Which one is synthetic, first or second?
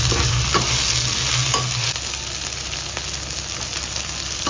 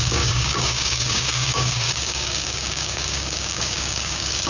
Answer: second